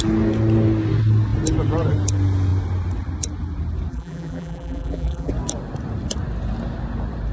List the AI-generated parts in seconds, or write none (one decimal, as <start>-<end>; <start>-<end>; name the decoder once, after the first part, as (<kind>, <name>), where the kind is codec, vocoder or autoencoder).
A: 3.9-5.3 (vocoder, BigVGAN v2)